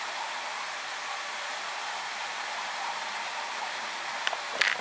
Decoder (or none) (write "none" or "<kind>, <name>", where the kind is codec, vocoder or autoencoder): none